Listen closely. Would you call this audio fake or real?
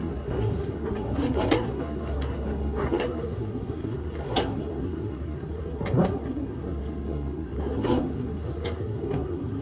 fake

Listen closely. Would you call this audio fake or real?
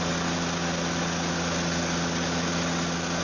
real